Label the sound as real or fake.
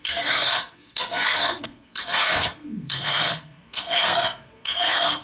fake